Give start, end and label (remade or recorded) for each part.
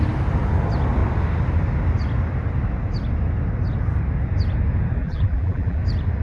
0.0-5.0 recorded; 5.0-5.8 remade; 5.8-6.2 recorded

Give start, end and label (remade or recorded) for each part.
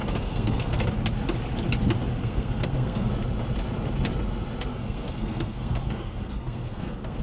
0.0-0.9 remade; 0.9-2.2 recorded; 2.2-3.1 remade; 3.1-4.7 recorded; 4.7-7.2 remade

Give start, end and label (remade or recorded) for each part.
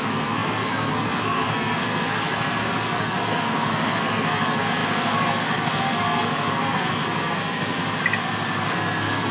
0.0-7.8 remade; 7.8-8.7 recorded; 8.7-9.3 remade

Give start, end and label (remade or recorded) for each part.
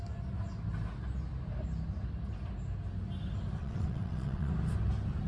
0.0-3.6 recorded; 3.6-4.5 remade; 4.5-5.3 recorded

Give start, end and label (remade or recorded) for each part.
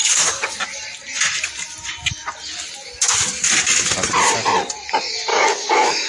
0.0-0.5 remade; 0.5-5.3 recorded; 5.3-6.1 remade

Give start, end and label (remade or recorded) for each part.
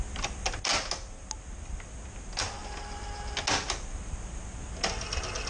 0.0-5.5 recorded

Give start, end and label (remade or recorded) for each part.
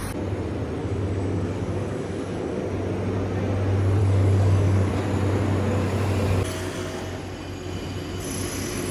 0.0-0.8 recorded; 0.8-2.6 remade; 2.6-4.0 recorded; 4.0-4.9 remade; 4.9-8.9 recorded